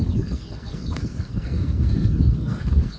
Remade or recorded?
remade